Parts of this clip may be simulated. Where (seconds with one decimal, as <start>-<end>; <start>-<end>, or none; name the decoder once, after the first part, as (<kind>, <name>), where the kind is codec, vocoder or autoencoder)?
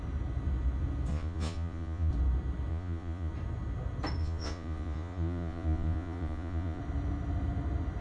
1.1-2.1 (vocoder, Vocos); 2.7-3.3; 4.2-6.8